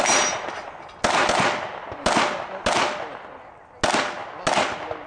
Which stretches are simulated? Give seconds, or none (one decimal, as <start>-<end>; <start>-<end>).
none